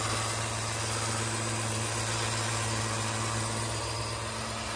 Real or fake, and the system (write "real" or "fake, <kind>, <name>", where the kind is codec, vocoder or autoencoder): real